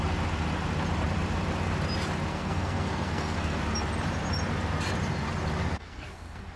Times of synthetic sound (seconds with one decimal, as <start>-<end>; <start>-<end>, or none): 2.3-3.6; 5.7-6.6